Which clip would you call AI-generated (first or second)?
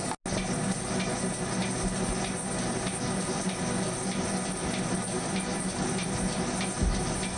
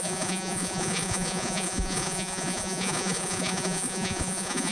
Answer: second